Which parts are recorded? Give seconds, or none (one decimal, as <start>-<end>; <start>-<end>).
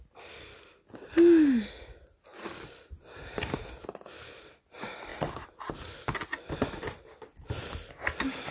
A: 0.0-5.1; 5.7-8.5